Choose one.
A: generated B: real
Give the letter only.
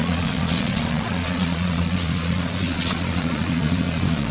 A